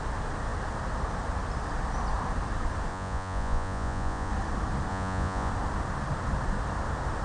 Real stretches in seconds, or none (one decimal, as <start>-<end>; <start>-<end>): 0.0-2.9; 4.3-4.9; 5.5-7.2